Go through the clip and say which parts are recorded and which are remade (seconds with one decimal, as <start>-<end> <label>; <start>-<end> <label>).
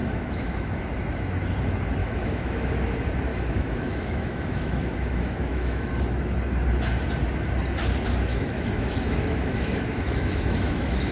0.0-0.8 remade; 0.8-2.0 recorded; 2.0-2.7 remade; 2.7-3.3 recorded; 3.3-5.9 remade; 5.9-8.3 recorded; 8.3-11.1 remade